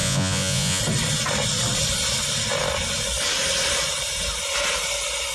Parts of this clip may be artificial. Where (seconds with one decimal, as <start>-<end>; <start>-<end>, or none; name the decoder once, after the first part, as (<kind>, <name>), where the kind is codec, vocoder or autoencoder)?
0.0-0.8 (vocoder, Vocos)